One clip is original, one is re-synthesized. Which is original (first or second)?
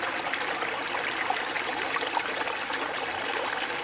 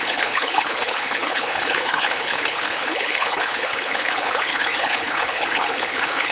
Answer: first